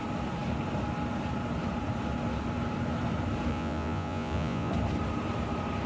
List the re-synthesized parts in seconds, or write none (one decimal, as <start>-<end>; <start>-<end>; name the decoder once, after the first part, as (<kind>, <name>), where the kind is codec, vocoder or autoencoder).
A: 3.5-4.7 (vocoder, Vocos)